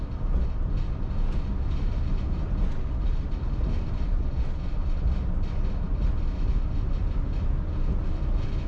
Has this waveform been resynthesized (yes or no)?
no